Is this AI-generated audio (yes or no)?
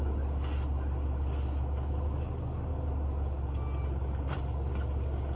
no